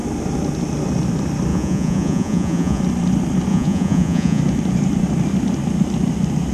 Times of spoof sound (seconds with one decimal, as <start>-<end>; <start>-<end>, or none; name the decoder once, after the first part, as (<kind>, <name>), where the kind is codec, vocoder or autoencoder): 1.5-2.8 (vocoder, Vocos); 3.5-4.4